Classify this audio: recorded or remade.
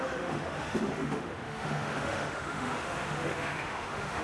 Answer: remade